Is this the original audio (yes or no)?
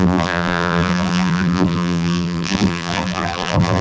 no